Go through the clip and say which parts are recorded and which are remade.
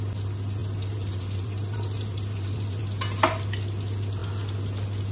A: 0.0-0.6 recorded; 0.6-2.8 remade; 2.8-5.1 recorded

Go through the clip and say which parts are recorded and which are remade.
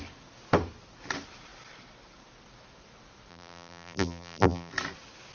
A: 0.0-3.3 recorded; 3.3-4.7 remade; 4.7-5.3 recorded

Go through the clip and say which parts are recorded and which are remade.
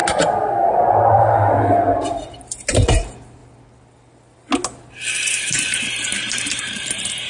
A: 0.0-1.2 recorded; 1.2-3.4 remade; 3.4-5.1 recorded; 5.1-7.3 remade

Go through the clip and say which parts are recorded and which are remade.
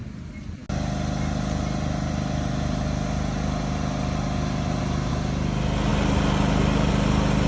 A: 0.0-5.9 recorded; 5.9-6.9 remade; 6.9-7.5 recorded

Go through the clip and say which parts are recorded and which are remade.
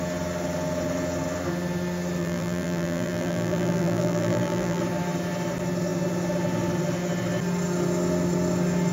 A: 0.0-2.2 recorded; 2.2-4.8 remade; 4.8-8.9 recorded